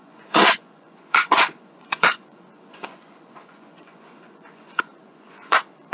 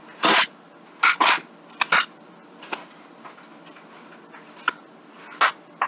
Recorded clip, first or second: second